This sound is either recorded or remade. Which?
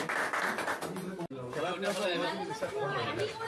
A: remade